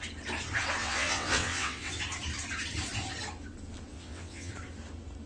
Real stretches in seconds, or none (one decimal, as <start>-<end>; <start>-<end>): 0.0-0.8; 1.9-3.9; 4.5-5.3